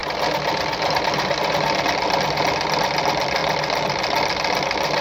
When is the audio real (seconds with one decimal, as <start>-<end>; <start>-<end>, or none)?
0.0-5.0